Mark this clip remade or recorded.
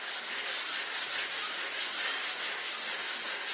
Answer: recorded